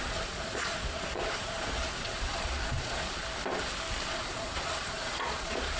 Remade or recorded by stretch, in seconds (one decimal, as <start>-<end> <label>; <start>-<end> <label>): 0.0-3.2 remade; 3.2-4.1 recorded; 4.1-5.8 remade